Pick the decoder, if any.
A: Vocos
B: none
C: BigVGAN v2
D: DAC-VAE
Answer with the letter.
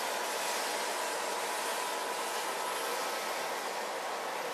B